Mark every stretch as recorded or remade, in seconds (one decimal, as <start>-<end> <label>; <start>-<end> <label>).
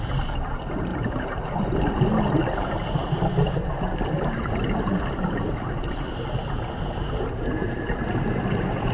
0.0-8.9 recorded